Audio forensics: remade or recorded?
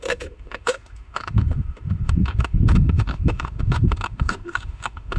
remade